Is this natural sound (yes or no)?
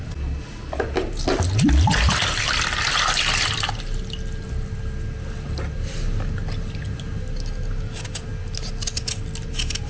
yes